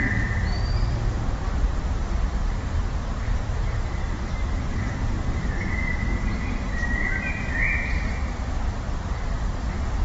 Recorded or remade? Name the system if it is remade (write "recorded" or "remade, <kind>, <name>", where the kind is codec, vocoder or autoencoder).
remade, vocoder, BigVGAN v2